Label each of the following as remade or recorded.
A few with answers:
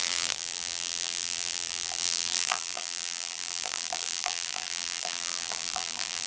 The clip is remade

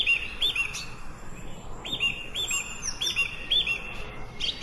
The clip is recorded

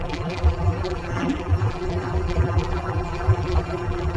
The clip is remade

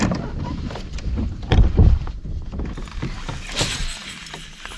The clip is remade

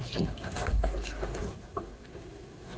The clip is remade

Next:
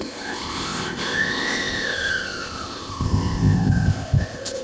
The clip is remade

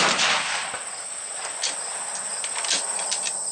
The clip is recorded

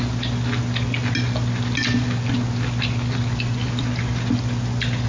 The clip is recorded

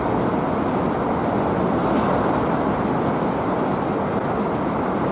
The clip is recorded